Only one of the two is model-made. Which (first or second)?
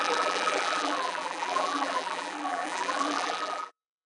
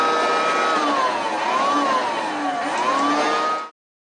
first